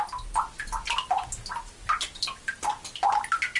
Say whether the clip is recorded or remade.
recorded